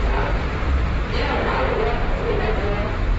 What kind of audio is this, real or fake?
fake